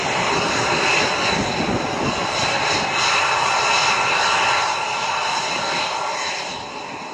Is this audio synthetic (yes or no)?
no